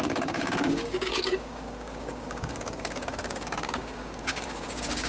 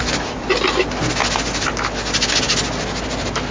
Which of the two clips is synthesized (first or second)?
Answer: first